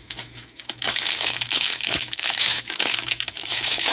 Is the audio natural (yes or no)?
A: no